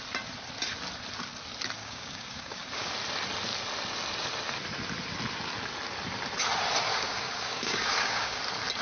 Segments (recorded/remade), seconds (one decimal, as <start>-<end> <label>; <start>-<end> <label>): 0.0-1.8 recorded; 1.8-2.9 remade; 2.9-6.9 recorded; 6.9-8.4 remade; 8.4-8.8 recorded